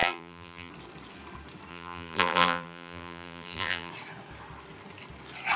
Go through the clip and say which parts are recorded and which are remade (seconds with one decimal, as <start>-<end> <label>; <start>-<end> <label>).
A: 0.0-0.7 remade; 0.7-1.7 recorded; 1.7-3.9 remade; 3.9-5.6 recorded